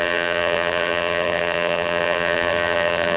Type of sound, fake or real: fake